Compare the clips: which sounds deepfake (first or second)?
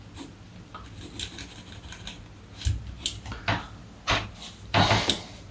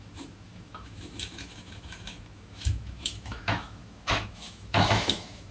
second